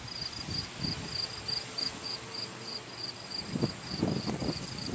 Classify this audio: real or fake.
real